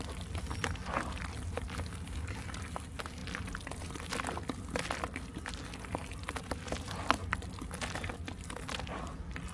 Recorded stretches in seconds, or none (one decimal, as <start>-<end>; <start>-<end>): 0.0-9.5